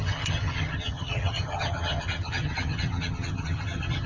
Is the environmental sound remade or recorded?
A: remade